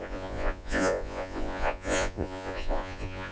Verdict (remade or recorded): remade